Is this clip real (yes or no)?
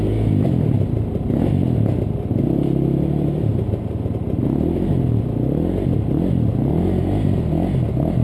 yes